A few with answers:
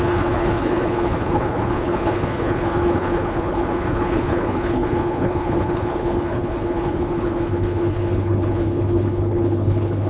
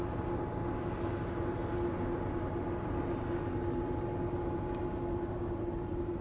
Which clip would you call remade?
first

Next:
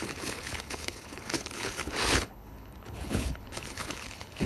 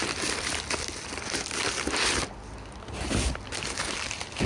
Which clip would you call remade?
first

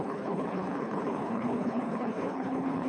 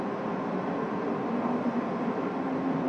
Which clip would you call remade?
first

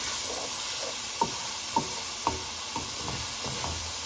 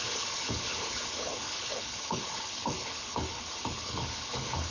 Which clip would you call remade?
second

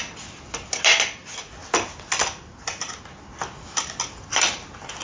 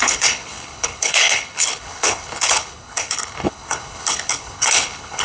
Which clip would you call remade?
second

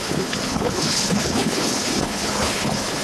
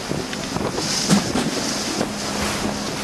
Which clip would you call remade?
first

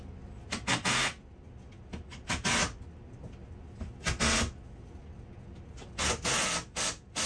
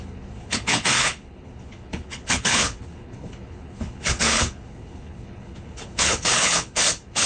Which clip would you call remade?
second